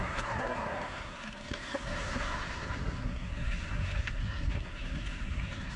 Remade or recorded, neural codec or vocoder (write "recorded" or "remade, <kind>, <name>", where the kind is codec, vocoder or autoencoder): remade, codec, SNAC